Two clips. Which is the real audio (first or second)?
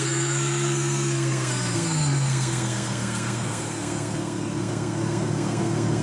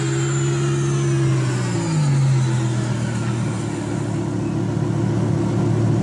second